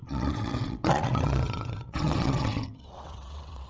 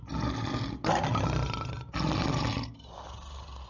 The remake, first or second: first